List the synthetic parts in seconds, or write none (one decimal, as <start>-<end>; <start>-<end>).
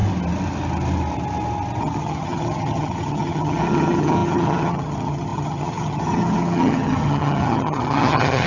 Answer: 1.8-8.5